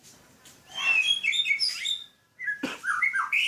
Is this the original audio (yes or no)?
no